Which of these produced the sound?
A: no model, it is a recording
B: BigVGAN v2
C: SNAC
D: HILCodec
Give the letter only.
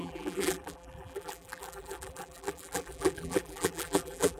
B